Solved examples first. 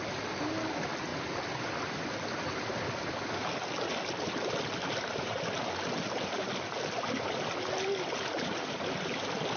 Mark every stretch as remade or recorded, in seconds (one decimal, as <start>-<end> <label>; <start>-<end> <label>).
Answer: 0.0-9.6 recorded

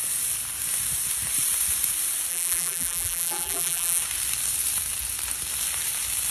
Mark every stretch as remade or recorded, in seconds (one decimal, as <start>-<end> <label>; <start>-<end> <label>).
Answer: 0.0-2.3 recorded; 2.3-4.0 remade; 4.0-6.3 recorded

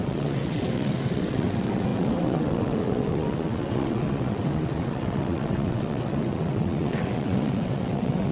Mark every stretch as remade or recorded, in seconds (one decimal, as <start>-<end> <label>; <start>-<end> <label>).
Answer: 0.0-8.3 remade

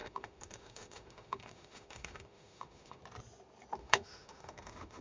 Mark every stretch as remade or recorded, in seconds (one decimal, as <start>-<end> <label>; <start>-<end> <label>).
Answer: 0.0-3.0 remade; 3.0-3.8 recorded; 3.8-5.0 remade

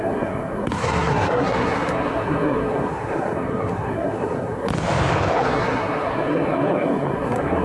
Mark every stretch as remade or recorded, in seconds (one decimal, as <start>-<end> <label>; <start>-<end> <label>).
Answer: 0.0-4.7 remade; 4.7-5.4 recorded; 5.4-7.6 remade